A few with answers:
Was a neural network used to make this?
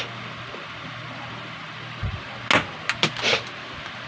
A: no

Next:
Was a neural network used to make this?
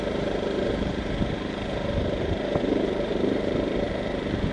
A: yes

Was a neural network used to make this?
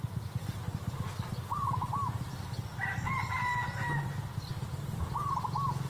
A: no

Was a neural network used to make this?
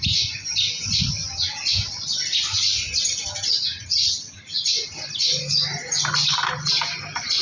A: no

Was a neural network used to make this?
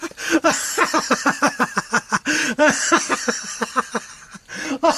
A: no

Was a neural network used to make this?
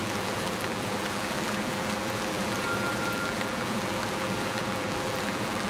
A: yes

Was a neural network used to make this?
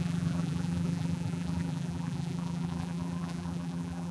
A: yes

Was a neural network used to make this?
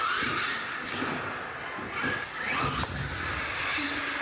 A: no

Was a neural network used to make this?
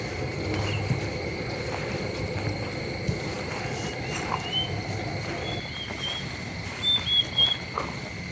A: no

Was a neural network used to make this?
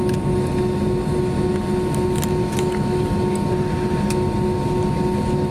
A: no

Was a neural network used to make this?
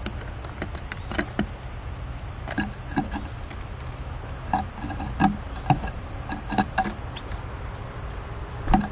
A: no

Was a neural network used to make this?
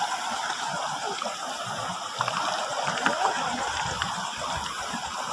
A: no